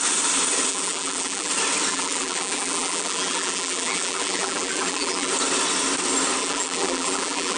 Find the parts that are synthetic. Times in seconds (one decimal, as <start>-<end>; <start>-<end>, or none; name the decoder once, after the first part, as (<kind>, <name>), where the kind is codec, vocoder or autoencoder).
0.7-1.5 (vocoder, BigVGAN v2); 1.9-5.3; 6.4-7.6